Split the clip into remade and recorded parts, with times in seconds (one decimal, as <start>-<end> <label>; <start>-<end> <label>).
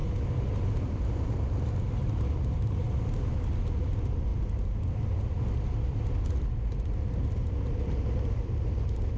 0.0-9.2 recorded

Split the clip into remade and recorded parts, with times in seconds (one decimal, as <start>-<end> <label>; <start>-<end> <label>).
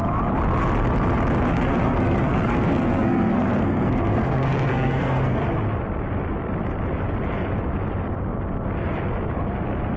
0.0-1.5 recorded; 1.5-5.4 remade; 5.4-10.0 recorded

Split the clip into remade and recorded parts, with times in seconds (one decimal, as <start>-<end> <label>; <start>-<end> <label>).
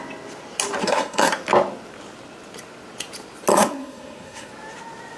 0.0-0.8 recorded; 0.8-1.3 remade; 1.3-3.5 recorded; 3.5-4.5 remade; 4.5-5.2 recorded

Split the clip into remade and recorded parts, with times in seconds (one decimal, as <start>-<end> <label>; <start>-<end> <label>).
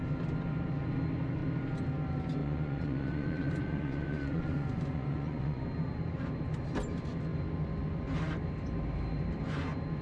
0.0-2.4 recorded; 2.4-5.6 remade; 5.6-10.0 recorded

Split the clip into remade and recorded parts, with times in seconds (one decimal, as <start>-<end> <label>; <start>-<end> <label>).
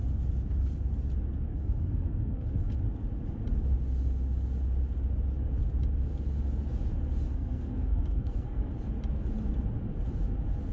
0.0-1.5 recorded; 1.5-2.8 remade; 2.8-7.3 recorded; 7.3-8.7 remade; 8.7-10.7 recorded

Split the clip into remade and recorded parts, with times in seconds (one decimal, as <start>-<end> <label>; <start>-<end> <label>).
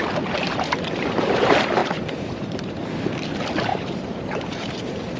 0.0-1.8 recorded; 1.8-2.8 remade; 2.8-3.7 recorded; 3.7-4.4 remade; 4.4-5.2 recorded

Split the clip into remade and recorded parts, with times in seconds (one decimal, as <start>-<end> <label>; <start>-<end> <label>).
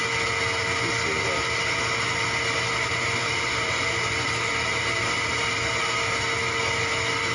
0.0-3.2 recorded; 3.2-5.4 remade; 5.4-7.3 recorded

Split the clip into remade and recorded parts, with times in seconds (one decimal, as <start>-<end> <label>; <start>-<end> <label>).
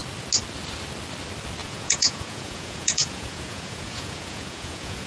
0.0-1.6 recorded; 1.6-5.1 remade